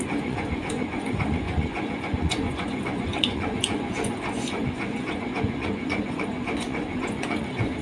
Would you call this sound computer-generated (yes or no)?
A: yes